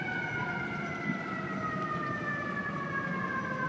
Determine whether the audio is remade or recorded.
recorded